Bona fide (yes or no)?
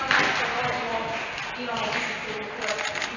yes